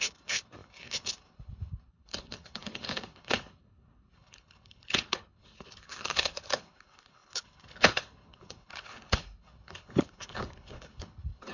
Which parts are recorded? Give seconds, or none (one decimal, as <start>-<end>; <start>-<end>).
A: none